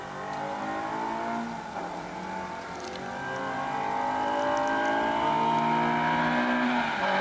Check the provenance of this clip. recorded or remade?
recorded